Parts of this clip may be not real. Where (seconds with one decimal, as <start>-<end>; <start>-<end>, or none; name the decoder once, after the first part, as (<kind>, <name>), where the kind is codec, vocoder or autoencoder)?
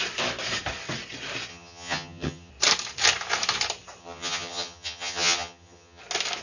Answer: 1.5-2.5 (vocoder, HiFi-GAN); 4.0-6.0